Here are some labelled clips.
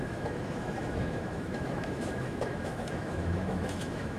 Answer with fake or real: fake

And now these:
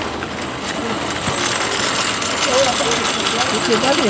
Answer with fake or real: real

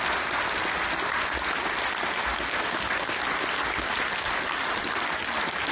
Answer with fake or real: real